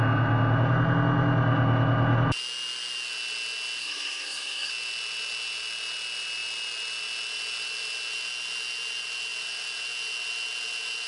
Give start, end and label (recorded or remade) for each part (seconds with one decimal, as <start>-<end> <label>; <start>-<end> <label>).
0.0-3.8 recorded; 3.8-4.7 remade; 4.7-11.1 recorded